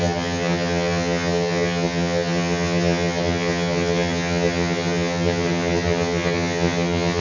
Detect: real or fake fake